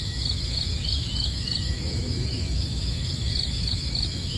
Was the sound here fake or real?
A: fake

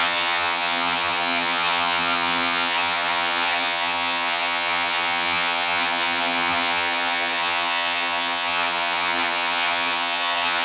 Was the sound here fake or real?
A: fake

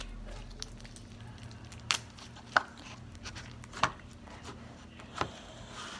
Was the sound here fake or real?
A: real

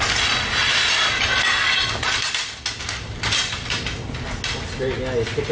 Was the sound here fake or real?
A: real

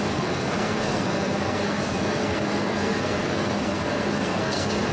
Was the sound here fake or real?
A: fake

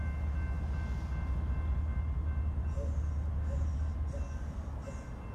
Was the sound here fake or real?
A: real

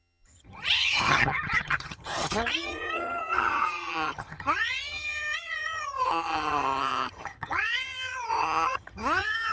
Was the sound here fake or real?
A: fake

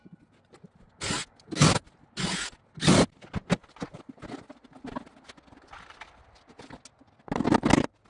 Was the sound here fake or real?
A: real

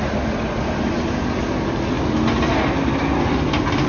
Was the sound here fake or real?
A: real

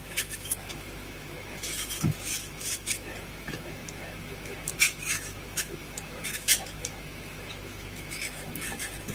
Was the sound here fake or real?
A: fake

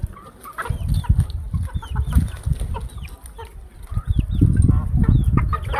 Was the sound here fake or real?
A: real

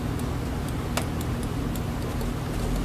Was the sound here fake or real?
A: real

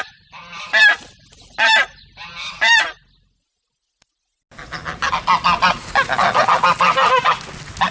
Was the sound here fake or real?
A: real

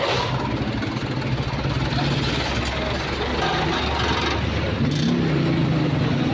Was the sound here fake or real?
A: real